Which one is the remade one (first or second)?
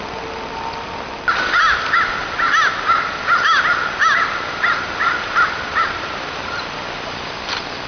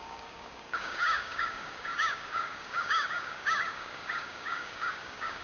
second